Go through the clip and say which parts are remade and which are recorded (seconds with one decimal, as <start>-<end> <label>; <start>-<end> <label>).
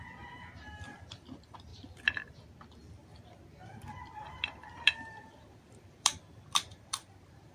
0.0-1.7 recorded; 1.7-2.3 remade; 2.3-2.8 recorded; 2.8-7.5 remade